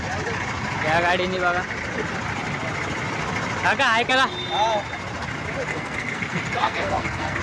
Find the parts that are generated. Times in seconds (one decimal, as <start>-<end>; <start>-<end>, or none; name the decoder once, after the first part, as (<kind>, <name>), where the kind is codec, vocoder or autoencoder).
5.7-7.4 (codec, SNAC)